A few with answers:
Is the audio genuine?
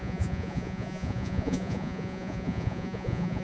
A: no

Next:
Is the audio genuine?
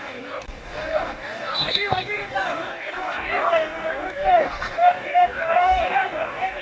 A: no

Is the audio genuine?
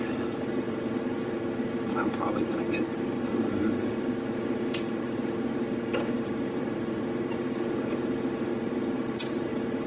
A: no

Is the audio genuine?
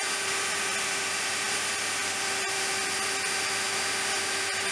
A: yes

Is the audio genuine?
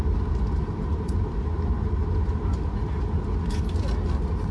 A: yes